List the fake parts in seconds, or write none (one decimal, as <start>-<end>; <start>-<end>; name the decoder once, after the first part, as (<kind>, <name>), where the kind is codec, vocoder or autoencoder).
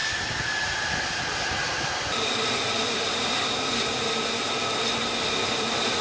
1.7-6.0 (vocoder, BigVGAN v2)